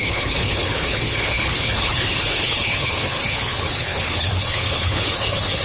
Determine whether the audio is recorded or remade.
remade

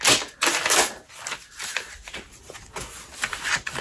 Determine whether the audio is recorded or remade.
recorded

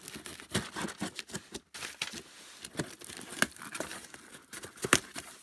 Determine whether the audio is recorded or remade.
recorded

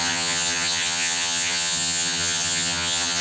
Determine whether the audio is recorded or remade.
remade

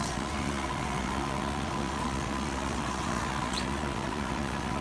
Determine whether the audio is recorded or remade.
remade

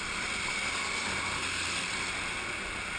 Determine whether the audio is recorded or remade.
recorded